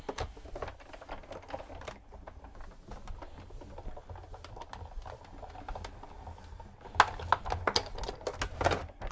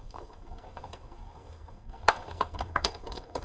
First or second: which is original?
first